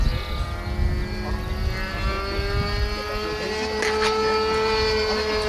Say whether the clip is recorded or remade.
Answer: recorded